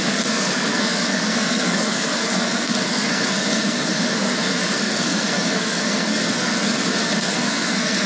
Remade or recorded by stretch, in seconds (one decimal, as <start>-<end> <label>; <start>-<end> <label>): 0.0-8.1 remade

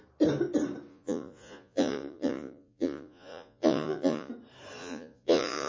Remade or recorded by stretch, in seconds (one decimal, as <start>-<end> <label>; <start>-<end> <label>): 0.0-0.9 recorded; 0.9-4.3 remade; 4.3-4.8 recorded; 4.8-5.7 remade